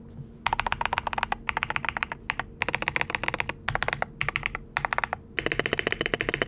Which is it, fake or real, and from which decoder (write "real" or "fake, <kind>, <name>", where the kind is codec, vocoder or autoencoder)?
real